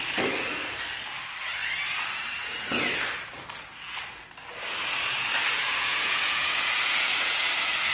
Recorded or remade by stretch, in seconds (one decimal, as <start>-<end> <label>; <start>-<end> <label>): 0.0-5.6 recorded; 5.6-7.5 remade; 7.5-7.9 recorded